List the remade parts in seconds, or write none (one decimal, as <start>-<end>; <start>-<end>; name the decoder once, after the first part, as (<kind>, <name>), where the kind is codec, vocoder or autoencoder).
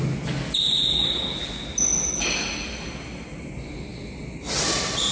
3.9-5.1 (vocoder, BigVGAN v2)